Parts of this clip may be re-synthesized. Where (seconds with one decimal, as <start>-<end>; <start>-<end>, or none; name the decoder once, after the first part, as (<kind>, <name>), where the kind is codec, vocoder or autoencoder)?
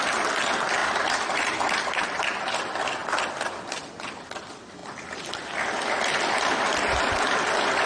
0.8-2.2 (vocoder, BigVGAN v2)